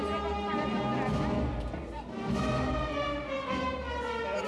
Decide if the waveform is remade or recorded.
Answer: recorded